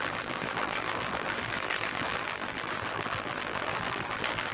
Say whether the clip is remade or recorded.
remade